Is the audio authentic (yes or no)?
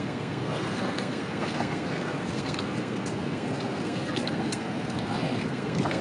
no